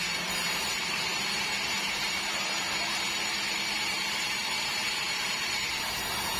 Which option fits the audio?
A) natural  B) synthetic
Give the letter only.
B